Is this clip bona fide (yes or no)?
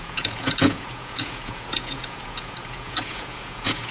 no